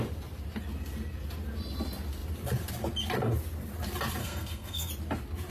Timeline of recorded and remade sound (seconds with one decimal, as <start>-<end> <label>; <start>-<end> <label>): 0.0-4.2 recorded; 4.2-4.9 remade; 4.9-5.5 recorded